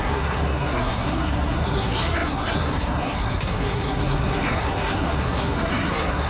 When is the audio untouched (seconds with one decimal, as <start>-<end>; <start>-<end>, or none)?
none